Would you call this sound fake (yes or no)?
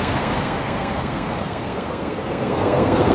yes